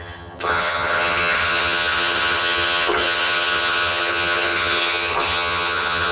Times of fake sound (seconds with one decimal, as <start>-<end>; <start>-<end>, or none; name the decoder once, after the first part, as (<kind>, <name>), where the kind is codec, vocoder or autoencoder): 0.0-6.1 (vocoder, HiFi-GAN)